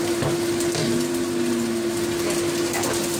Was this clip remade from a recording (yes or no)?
no